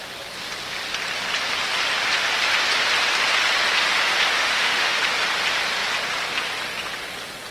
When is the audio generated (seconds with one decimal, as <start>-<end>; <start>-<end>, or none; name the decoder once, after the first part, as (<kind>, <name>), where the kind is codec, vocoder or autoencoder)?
4.4-5.0 (autoencoder, DAC-VAE)